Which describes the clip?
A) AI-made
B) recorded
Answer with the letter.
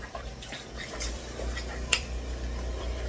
A